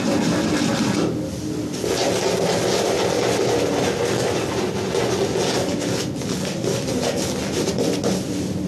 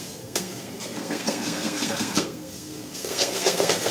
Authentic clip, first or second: first